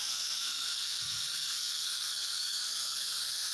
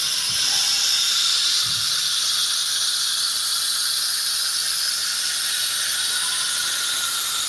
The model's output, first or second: first